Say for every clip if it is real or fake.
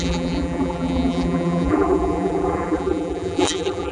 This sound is fake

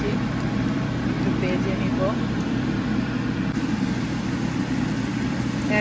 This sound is fake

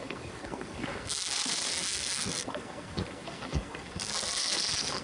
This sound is fake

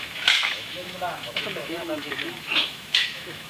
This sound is fake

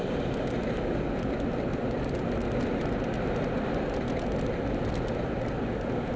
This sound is real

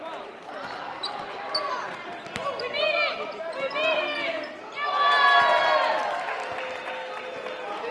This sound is real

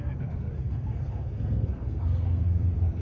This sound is fake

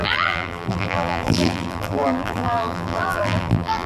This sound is fake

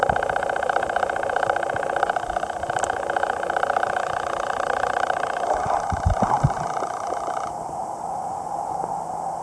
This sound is real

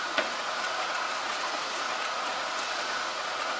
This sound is fake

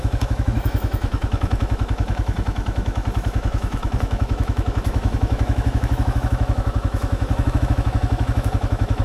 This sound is fake